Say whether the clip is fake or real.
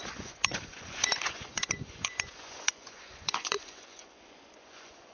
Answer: fake